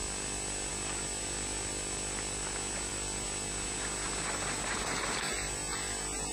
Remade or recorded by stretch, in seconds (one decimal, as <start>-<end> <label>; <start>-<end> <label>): 0.0-6.3 recorded